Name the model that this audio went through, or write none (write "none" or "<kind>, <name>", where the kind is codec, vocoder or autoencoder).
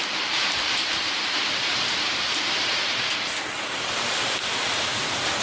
vocoder, BigVGAN v2